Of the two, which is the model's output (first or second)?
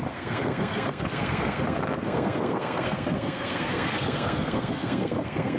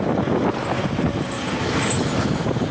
first